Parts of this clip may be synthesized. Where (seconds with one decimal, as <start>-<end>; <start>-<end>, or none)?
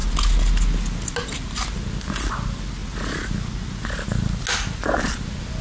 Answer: none